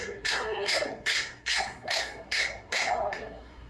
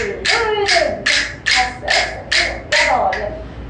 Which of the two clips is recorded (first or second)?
second